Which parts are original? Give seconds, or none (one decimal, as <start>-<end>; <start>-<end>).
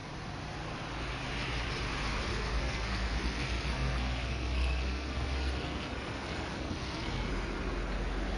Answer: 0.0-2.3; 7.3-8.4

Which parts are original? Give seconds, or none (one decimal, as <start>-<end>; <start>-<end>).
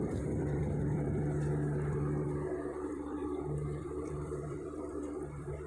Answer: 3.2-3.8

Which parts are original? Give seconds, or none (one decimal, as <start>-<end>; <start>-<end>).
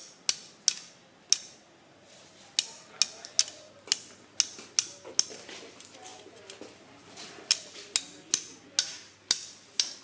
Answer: 0.0-10.0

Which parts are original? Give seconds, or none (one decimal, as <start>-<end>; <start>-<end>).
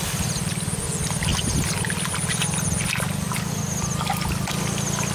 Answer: 0.0-5.1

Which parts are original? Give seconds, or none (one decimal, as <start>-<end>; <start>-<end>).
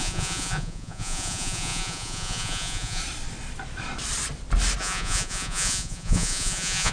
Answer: 3.0-4.8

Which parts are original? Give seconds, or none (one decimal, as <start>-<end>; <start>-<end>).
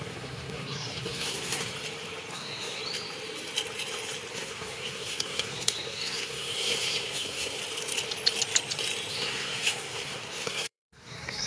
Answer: 1.7-2.3; 2.8-4.3; 7.6-9.1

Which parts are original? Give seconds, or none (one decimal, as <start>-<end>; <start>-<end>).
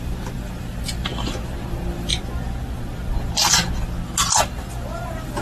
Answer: 1.1-1.7; 2.1-4.4